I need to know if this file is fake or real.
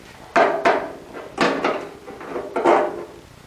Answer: real